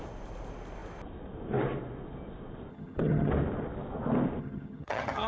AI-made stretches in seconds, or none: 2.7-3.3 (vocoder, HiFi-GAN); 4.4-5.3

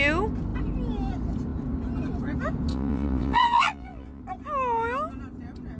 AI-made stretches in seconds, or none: 2.7-4.2 (vocoder, WaveNeXt)